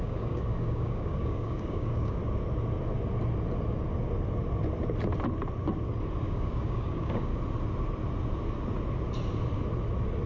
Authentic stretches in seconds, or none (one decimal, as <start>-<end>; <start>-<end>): 2.2-6.2; 7.3-10.3

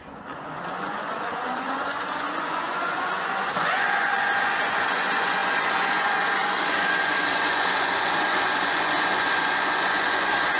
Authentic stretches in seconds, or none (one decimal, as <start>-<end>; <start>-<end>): none

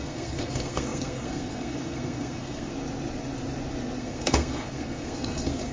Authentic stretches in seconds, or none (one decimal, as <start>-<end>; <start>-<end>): 2.7-4.0

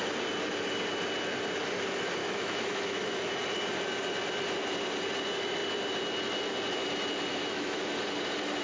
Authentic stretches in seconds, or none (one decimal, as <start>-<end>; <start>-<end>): 0.0-2.2; 3.3-7.3; 8.0-8.6